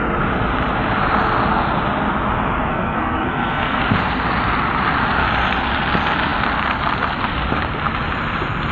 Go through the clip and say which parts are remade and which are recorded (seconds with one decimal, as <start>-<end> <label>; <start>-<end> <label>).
0.0-2.7 recorded; 2.7-3.8 remade; 3.8-8.7 recorded